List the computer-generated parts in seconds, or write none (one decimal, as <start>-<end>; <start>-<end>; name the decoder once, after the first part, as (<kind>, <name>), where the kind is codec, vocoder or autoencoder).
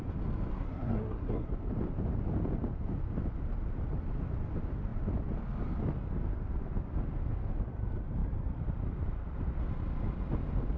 0.5-1.5 (codec, SNAC)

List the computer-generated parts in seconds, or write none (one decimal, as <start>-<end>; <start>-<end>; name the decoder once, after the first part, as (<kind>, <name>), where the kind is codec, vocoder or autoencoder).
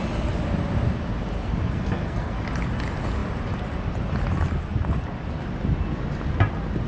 1.4-2.4 (codec, SNAC)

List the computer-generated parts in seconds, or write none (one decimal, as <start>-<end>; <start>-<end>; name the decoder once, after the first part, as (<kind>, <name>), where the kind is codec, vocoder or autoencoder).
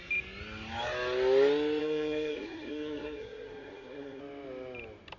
1.8-4.2 (codec, SNAC)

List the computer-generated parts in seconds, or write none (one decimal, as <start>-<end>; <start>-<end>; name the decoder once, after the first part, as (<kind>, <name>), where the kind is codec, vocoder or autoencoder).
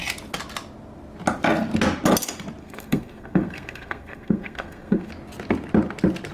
2.6-5.1 (codec, SNAC)